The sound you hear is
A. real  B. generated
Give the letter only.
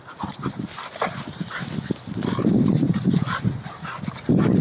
A